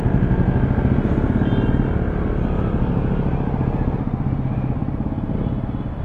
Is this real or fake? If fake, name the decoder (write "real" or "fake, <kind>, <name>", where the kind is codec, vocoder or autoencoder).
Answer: real